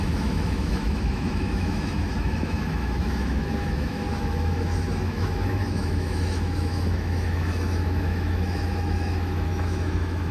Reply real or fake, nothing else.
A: fake